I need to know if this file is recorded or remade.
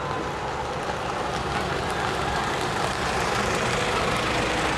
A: recorded